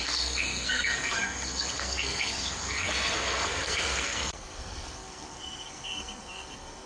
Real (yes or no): no